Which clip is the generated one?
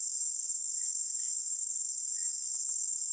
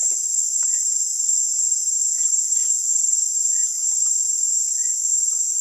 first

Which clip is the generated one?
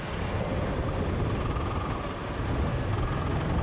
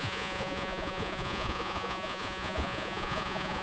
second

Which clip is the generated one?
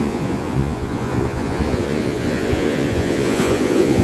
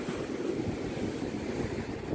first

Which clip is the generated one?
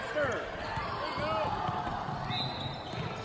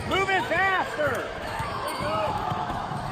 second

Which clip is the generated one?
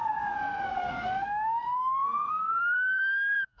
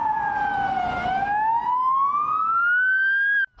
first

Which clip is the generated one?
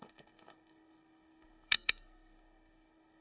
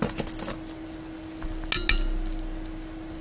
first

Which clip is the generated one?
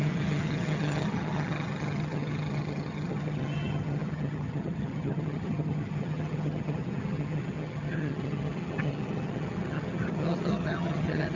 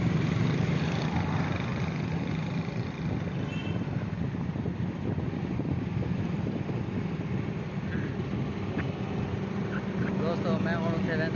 first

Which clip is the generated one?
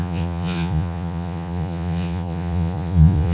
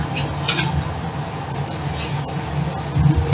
first